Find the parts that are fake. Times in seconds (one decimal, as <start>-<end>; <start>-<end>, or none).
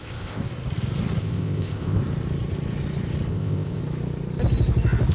0.0-0.4; 1.2-2.0; 3.3-3.8